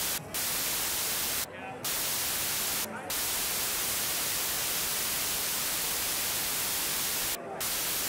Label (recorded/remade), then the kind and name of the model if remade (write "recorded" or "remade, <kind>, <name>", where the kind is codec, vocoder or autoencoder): recorded